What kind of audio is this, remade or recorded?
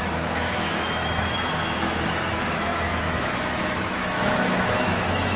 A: remade